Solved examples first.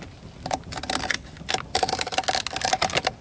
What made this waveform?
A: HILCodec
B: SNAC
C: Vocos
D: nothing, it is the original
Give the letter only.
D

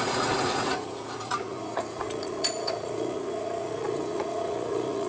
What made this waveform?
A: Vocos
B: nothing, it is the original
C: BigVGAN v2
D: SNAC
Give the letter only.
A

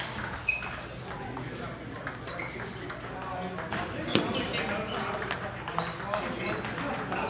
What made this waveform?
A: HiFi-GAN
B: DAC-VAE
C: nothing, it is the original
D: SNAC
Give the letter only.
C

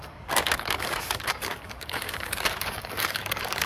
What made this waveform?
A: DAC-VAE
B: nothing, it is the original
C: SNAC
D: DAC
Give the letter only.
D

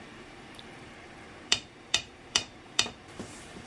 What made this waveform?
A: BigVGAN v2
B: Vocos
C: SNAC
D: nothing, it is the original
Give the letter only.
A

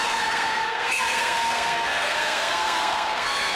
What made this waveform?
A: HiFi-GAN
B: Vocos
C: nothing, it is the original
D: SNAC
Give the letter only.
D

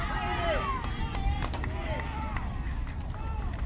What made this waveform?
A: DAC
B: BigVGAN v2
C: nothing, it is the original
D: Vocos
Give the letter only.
C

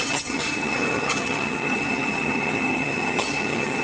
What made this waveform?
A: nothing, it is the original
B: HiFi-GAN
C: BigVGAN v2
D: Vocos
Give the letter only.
B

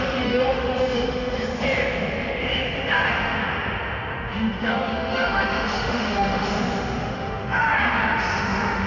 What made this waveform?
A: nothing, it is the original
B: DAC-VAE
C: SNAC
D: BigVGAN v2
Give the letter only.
B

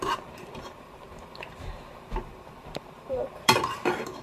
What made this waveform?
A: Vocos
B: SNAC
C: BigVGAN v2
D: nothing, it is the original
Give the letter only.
C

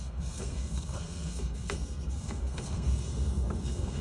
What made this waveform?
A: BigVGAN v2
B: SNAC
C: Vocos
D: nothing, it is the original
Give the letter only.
B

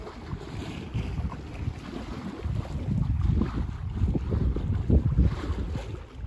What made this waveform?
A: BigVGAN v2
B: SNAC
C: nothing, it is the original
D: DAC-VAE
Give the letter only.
C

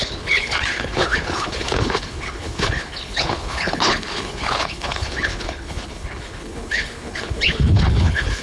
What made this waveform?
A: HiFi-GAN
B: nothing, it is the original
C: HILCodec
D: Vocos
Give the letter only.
C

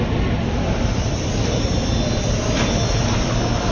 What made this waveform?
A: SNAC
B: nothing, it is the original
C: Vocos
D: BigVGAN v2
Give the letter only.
B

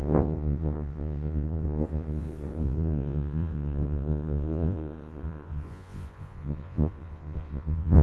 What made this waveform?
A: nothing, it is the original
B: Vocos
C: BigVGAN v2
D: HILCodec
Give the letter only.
B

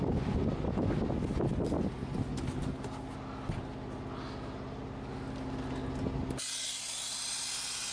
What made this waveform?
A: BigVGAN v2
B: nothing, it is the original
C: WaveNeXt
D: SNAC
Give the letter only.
B